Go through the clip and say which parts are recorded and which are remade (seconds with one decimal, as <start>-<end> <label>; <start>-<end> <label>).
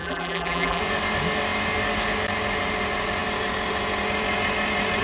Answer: 0.0-0.8 remade; 0.8-5.0 recorded